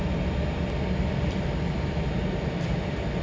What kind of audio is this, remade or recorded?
recorded